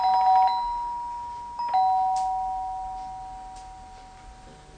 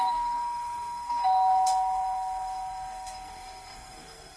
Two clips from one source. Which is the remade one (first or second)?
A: second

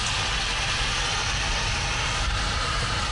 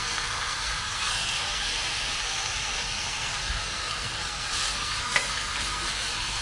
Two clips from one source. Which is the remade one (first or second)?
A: second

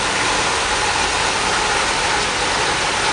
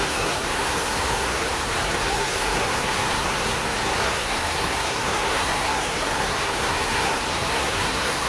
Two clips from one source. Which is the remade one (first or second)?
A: second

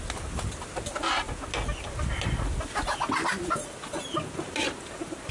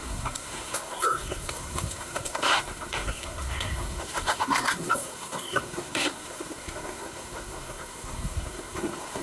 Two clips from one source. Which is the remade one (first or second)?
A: second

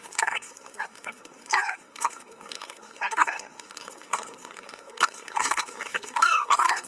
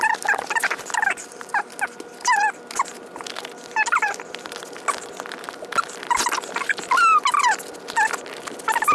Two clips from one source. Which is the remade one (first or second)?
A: first